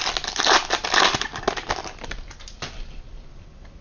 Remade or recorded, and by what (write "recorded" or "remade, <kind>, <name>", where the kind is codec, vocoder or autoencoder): recorded